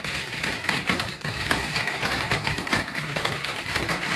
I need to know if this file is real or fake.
fake